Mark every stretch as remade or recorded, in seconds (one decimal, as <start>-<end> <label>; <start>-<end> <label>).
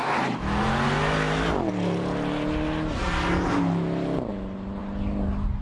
0.0-5.6 recorded